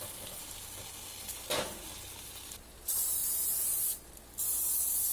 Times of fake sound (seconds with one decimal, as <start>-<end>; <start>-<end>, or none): none

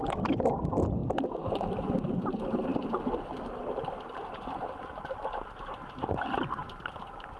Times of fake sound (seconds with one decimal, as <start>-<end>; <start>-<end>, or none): none

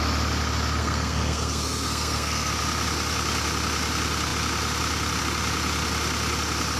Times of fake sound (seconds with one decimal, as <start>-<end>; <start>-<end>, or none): 0.8-2.5

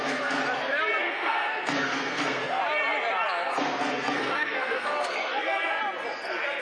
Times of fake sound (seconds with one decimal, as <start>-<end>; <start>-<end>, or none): 0.0-0.4; 1.0-2.6; 3.5-5.8

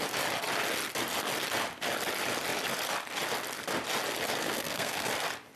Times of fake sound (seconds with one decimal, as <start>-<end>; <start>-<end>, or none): 4.4-5.1